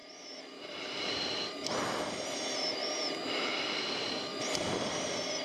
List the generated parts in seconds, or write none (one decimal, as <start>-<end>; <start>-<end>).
0.0-1.6; 2.1-2.8; 3.6-5.4